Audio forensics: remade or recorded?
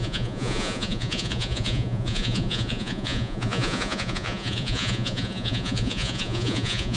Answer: remade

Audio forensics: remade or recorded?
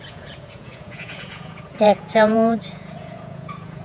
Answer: remade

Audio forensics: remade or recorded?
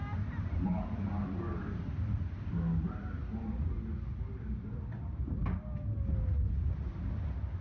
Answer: recorded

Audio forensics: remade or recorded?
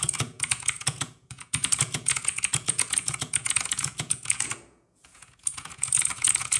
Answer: remade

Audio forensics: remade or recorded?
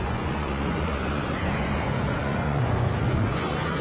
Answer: remade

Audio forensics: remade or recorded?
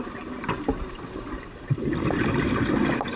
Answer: recorded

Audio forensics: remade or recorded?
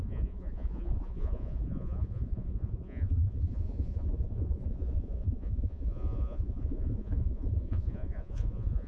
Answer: remade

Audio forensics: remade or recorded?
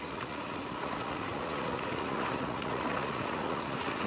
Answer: remade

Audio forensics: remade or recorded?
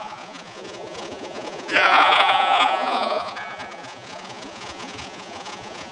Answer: remade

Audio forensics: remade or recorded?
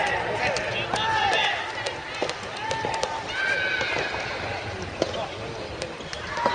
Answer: recorded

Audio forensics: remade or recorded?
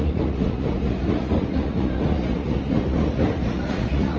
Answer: remade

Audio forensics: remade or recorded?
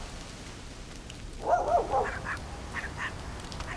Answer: recorded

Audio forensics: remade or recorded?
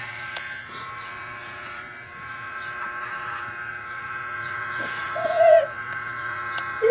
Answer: remade